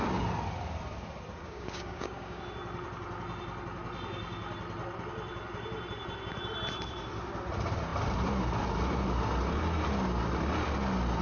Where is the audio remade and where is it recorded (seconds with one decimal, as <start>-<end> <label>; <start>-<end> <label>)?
0.0-1.4 recorded; 1.4-2.4 remade; 2.4-11.2 recorded